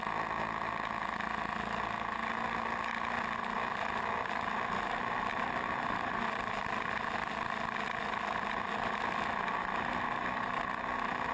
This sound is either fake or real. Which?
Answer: real